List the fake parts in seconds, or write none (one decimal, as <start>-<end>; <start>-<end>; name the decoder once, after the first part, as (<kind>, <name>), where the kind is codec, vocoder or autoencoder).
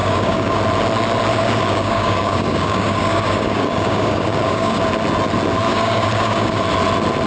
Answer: 0.0-0.6 (codec, DAC); 1.3-4.8; 5.7-6.6